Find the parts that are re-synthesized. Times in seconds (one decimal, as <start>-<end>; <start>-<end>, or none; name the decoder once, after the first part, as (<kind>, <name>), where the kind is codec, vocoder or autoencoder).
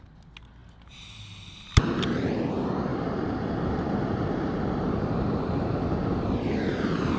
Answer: 2.9-7.2 (vocoder, BigVGAN v2)